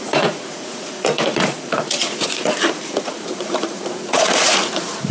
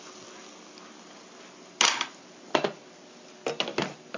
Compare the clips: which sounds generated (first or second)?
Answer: first